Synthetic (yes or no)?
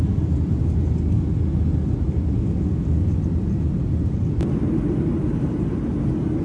no